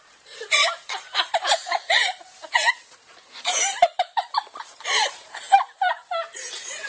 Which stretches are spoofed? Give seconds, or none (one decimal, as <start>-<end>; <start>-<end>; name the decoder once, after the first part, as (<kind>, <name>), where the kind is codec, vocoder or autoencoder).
0.0-6.9 (vocoder, BigVGAN v2)